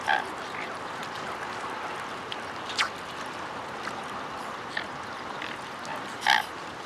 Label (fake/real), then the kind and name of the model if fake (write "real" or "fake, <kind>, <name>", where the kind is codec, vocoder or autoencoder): real